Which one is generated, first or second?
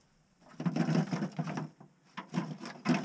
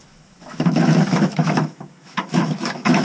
second